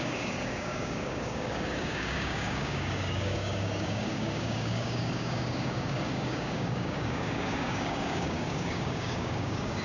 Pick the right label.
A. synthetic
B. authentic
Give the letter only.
A